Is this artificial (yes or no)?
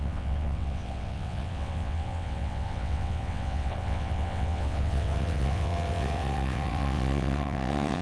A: yes